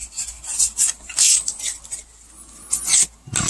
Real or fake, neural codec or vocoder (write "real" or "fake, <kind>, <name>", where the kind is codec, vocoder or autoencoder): real